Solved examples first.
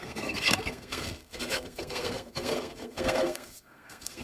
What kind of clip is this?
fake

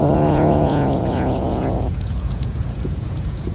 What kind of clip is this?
fake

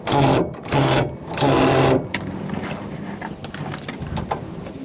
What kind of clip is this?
real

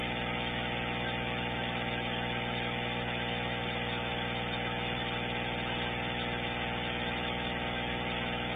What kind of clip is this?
real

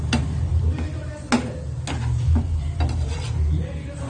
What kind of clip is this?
real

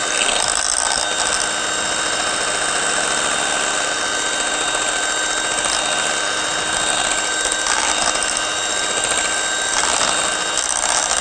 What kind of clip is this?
real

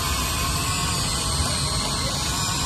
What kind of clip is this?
real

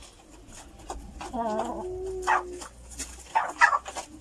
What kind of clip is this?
real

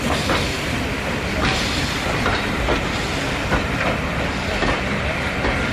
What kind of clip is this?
real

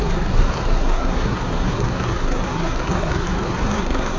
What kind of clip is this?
fake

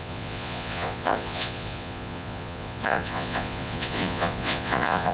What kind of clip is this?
fake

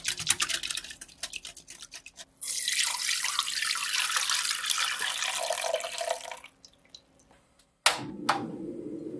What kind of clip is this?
real